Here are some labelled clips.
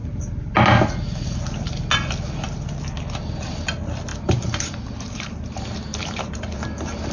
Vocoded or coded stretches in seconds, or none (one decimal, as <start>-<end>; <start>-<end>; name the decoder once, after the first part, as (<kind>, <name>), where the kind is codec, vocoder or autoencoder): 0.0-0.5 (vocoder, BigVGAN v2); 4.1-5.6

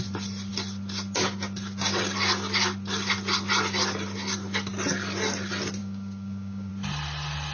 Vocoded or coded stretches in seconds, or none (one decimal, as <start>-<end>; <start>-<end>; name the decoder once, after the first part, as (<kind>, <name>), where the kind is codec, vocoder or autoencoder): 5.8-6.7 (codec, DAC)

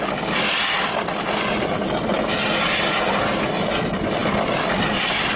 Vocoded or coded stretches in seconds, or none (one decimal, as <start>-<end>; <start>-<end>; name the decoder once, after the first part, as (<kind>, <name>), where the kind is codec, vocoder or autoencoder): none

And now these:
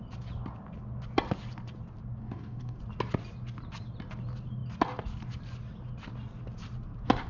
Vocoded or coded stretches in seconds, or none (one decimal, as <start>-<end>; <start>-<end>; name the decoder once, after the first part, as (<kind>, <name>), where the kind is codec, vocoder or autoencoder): 2.2-2.8 (codec, DAC)